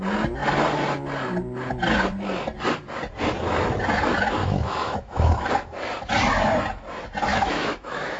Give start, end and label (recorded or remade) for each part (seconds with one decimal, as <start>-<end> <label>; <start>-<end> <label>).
0.0-4.4 recorded; 4.4-5.5 remade; 5.5-7.3 recorded; 7.3-8.2 remade

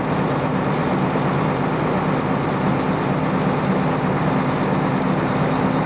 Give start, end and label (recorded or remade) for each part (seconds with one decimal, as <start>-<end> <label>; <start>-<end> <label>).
0.0-5.9 recorded

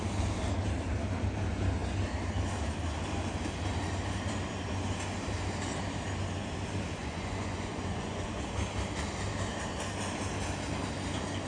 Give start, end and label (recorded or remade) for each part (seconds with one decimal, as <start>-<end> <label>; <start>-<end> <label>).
0.0-7.0 recorded; 7.0-8.4 remade; 8.4-11.5 recorded

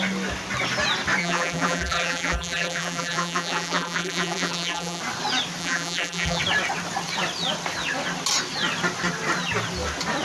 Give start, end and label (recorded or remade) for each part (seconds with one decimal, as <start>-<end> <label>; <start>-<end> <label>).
0.0-1.2 recorded; 1.2-5.0 remade; 5.0-5.6 recorded; 5.6-6.4 remade; 6.4-10.2 recorded

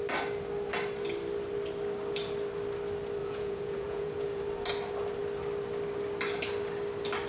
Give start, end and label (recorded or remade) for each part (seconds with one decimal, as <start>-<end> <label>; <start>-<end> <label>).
0.0-3.2 recorded; 3.2-4.4 remade; 4.4-7.3 recorded